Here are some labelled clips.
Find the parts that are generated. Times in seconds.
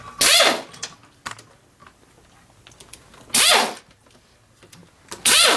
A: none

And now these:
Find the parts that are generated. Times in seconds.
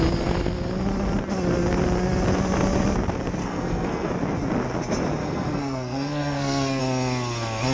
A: 3.4-4.1; 5.2-6.8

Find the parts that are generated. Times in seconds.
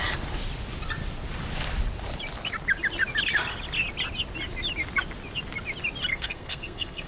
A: 6.1-7.1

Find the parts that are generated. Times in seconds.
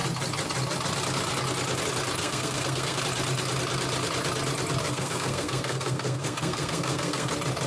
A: 2.2-3.0; 4.8-7.3